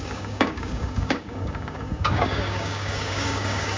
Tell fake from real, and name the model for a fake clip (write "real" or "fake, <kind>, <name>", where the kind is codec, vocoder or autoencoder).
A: fake, codec, DAC